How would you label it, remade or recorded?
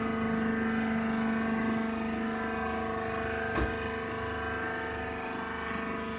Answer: recorded